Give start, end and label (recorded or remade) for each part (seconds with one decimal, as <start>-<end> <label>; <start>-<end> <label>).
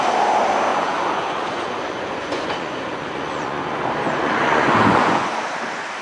0.0-0.7 recorded; 0.7-3.8 remade; 3.8-4.2 recorded; 4.2-5.3 remade; 5.3-6.0 recorded